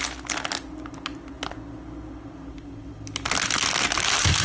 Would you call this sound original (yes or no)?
yes